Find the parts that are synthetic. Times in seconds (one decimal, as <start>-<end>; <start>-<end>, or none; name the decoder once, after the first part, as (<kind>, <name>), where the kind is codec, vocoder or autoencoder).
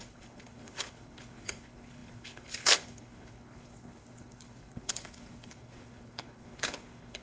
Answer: 0.0-7.2 (codec, HILCodec)